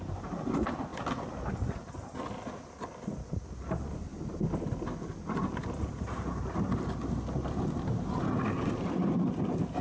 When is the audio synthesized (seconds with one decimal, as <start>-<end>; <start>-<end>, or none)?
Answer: none